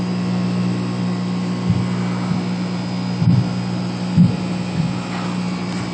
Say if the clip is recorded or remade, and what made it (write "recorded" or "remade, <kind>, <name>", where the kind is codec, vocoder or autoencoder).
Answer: recorded